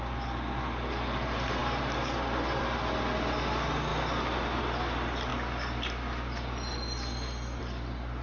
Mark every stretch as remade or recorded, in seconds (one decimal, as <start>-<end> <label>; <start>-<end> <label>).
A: 0.0-8.2 recorded